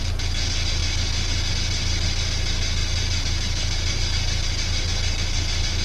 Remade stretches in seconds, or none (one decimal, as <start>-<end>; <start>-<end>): none